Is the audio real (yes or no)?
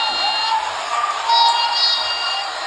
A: yes